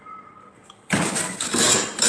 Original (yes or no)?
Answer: yes